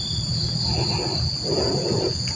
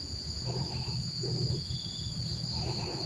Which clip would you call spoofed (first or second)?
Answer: second